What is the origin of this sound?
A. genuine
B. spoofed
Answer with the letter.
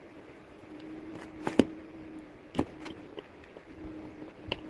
A